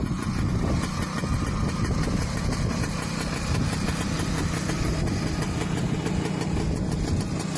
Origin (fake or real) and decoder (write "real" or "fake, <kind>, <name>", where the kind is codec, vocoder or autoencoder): real